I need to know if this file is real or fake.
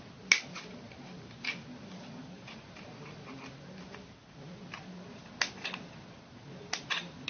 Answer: real